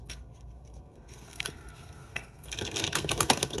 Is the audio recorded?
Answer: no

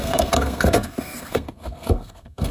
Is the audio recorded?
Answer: no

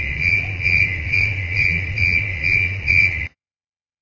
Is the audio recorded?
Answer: no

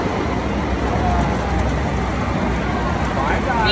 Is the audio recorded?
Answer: yes